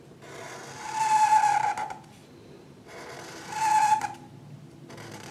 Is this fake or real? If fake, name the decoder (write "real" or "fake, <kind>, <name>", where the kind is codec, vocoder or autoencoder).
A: real